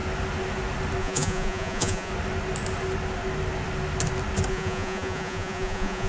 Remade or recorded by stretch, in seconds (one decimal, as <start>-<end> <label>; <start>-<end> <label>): 0.0-1.0 recorded; 1.0-2.1 remade; 2.1-4.5 recorded; 4.5-6.1 remade